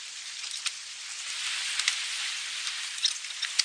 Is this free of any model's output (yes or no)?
yes